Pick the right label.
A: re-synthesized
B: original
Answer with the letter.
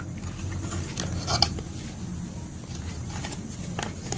B